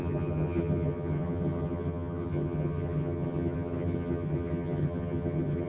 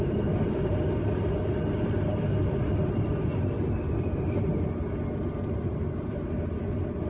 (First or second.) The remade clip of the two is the first